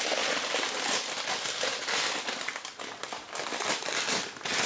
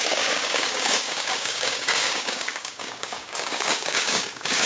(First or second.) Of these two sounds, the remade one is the second